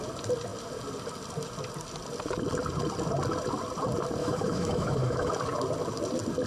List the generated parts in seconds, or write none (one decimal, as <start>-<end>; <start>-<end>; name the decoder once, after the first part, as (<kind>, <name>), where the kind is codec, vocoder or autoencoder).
4.2-5.3 (autoencoder, DAC-VAE)